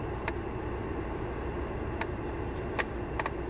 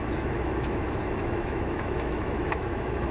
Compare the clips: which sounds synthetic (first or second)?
second